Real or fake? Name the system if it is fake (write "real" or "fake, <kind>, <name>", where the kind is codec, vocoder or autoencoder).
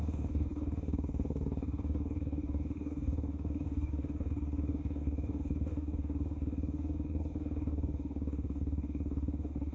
fake, codec, DAC